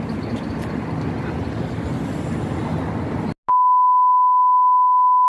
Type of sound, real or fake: real